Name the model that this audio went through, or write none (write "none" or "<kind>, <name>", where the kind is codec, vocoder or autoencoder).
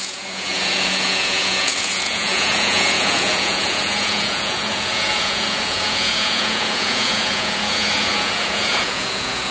vocoder, Vocos